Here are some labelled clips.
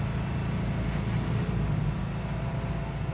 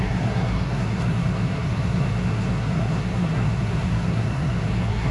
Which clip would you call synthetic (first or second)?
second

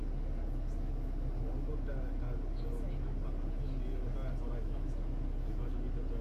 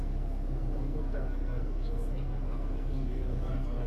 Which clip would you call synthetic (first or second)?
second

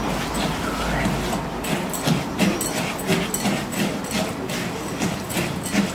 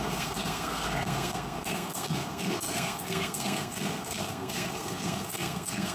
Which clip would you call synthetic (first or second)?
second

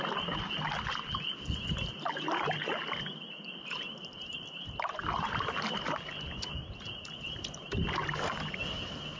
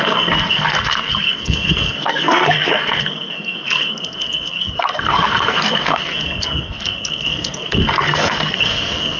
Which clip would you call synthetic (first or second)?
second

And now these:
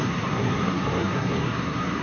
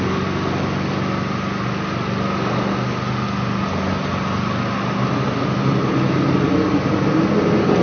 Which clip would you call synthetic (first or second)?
first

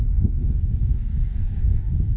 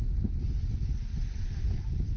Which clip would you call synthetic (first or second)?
first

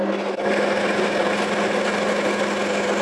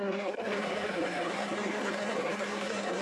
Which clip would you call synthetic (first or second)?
second